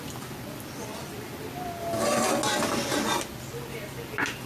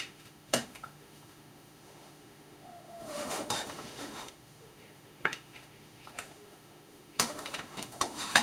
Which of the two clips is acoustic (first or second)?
first